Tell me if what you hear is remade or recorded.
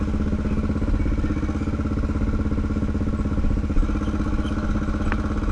recorded